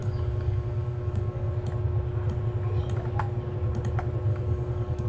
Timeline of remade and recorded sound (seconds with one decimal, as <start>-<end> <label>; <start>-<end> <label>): 0.0-1.5 remade; 1.5-4.3 recorded; 4.3-5.1 remade